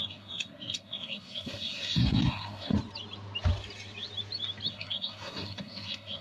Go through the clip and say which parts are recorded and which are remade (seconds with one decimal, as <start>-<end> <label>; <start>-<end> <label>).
0.0-2.7 remade; 2.7-4.7 recorded; 4.7-6.2 remade